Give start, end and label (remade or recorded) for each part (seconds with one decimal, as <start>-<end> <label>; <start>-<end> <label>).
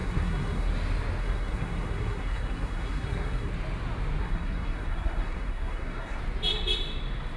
0.0-0.7 remade; 0.7-1.2 recorded; 1.2-3.5 remade; 3.5-4.2 recorded; 4.2-6.2 remade; 6.2-7.4 recorded